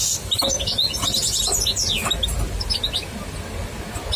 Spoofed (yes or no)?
no